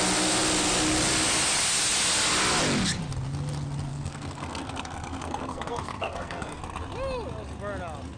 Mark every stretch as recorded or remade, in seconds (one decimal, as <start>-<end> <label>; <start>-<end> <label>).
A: 0.0-3.9 recorded; 3.9-6.6 remade; 6.6-8.2 recorded